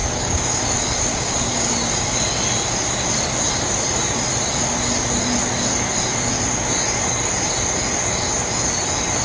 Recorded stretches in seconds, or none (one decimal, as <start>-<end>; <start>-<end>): 0.6-1.1; 2.2-9.2